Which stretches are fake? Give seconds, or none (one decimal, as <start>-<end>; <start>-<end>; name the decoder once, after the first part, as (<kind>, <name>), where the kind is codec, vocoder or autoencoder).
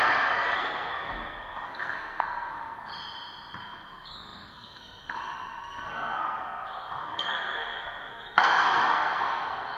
0.0-2.9 (codec, SNAC); 3.6-9.8